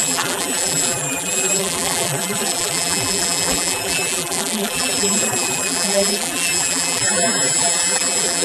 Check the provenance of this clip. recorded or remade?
remade